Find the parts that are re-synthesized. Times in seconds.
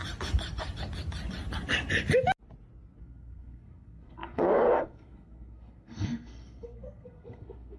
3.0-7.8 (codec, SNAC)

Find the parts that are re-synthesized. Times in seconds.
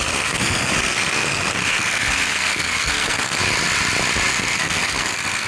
0.0-3.4 (codec, SNAC); 4.3-5.5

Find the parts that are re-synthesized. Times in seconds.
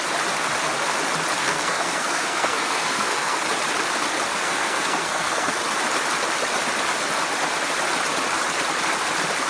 1.4-3.4 (codec, SNAC); 4.4-5.6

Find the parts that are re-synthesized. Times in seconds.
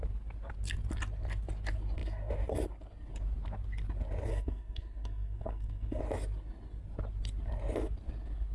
4.3-6.0 (codec, SNAC)